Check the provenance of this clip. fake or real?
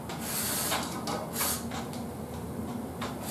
real